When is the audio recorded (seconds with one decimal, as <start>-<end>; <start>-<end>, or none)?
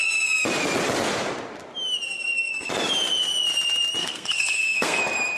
0.0-4.0; 5.0-5.4